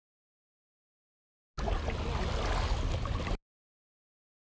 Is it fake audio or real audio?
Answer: real